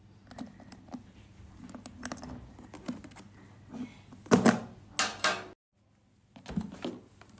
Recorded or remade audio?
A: recorded